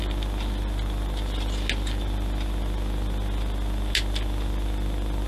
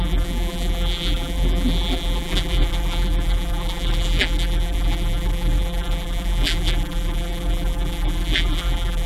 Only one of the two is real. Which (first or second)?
first